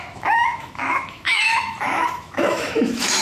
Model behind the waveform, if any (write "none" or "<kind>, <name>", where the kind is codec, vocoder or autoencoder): autoencoder, DAC-VAE